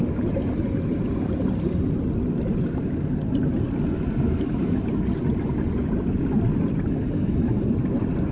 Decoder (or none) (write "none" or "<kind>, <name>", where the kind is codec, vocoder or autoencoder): none